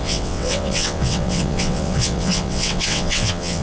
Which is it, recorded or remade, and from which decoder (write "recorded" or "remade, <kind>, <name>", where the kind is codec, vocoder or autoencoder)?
remade, vocoder, WaveNeXt